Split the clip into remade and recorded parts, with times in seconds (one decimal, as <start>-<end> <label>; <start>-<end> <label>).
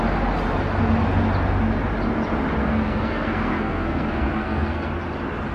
0.0-2.6 recorded; 2.6-4.9 remade; 4.9-5.5 recorded